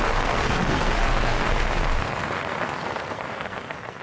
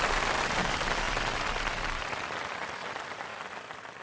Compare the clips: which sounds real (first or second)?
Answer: second